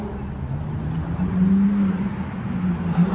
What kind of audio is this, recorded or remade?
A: recorded